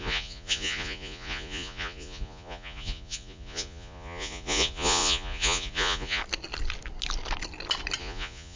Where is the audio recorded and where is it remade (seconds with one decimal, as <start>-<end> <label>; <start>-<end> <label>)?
0.0-6.2 remade; 6.2-8.0 recorded; 8.0-8.6 remade